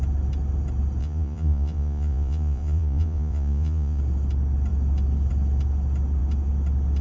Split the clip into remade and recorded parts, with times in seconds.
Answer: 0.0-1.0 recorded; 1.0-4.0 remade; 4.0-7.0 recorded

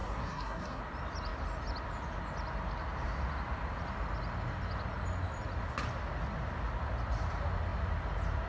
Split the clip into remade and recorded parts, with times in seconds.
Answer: 0.0-0.8 remade; 0.8-8.5 recorded

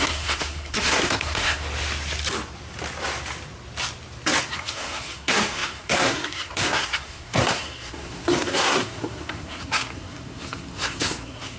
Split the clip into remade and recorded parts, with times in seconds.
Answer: 0.0-1.6 remade; 1.6-4.4 recorded; 4.4-11.6 remade

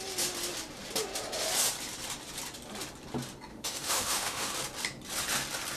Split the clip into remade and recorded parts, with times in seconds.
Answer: 0.0-3.5 recorded; 3.5-4.5 remade; 4.5-5.8 recorded